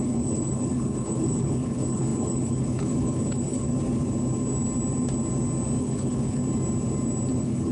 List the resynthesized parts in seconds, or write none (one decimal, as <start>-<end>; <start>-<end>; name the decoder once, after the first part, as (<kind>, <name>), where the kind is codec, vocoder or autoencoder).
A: 0.0-3.7 (codec, HILCodec); 5.8-6.4; 7.3-7.7